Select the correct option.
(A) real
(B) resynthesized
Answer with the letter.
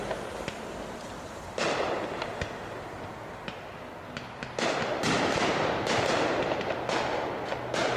A